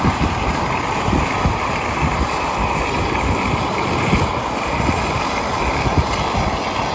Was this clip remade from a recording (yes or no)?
no